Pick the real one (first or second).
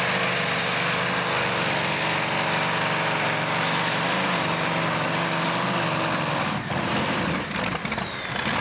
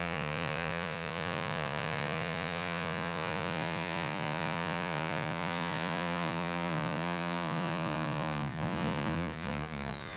first